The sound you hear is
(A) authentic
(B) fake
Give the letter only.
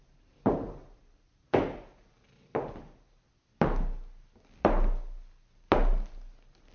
A